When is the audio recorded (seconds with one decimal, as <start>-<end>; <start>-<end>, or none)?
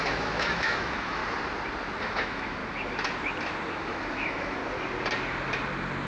1.2-2.1; 2.6-3.7; 4.6-6.1